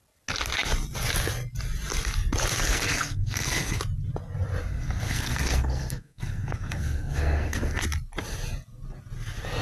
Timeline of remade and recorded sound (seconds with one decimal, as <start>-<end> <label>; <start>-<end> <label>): 0.0-2.6 recorded; 2.6-3.8 remade; 3.8-4.7 recorded; 4.7-7.8 remade; 7.8-9.6 recorded